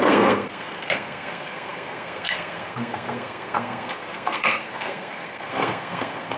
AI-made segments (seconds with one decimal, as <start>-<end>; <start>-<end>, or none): 0.0-6.4